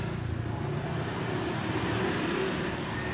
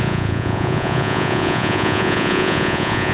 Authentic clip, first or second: first